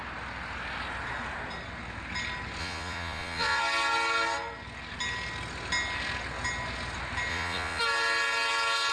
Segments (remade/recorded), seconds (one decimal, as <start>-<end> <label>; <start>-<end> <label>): 0.0-2.6 recorded; 2.6-3.6 remade; 3.6-7.3 recorded; 7.3-7.8 remade; 7.8-8.9 recorded